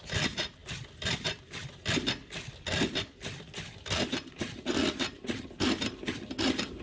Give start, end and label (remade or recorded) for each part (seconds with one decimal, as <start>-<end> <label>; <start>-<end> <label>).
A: 0.0-6.8 recorded